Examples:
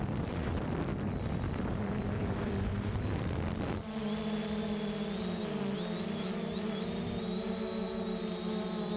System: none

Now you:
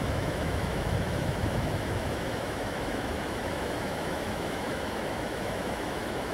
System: autoencoder, DAC-VAE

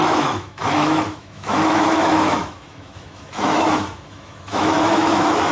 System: autoencoder, DAC-VAE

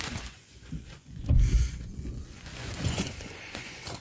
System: vocoder, Vocos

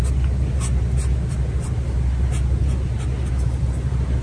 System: none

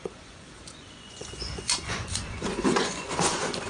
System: vocoder, Vocos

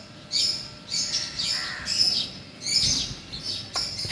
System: none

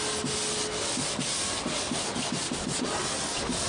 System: none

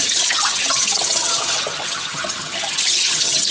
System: vocoder, HiFi-GAN